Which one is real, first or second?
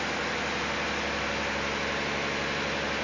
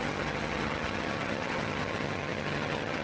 first